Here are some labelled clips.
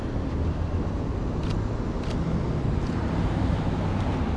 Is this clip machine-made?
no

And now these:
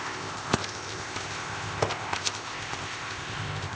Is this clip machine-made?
yes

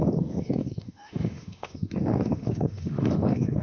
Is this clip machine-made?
yes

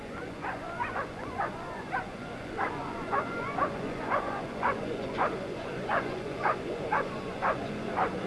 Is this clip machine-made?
yes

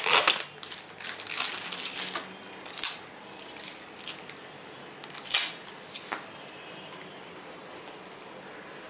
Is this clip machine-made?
no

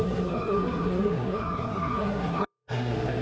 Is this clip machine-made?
yes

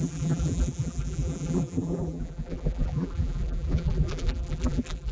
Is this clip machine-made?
yes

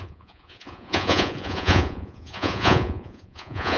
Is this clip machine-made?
yes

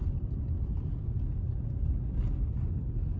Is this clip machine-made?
no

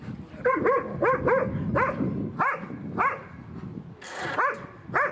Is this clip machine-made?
no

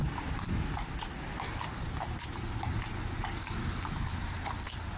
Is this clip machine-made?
no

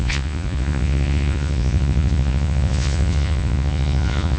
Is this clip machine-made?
yes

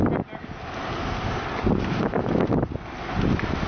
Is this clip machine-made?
no